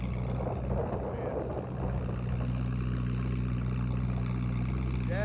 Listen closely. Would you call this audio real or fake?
real